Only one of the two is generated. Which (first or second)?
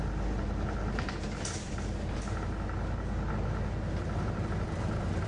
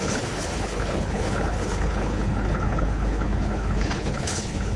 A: second